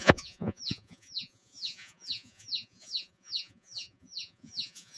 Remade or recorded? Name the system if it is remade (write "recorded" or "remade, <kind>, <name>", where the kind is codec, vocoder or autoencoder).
remade, vocoder, Vocos